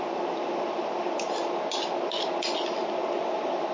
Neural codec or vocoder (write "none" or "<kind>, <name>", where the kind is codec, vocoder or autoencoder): none